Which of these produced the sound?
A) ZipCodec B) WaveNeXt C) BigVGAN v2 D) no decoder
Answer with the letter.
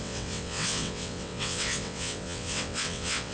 B